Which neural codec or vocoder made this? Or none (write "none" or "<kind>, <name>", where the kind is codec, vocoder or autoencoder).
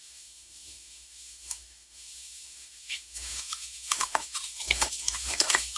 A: autoencoder, DAC-VAE